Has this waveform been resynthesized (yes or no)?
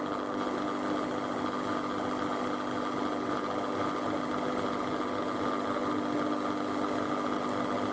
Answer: no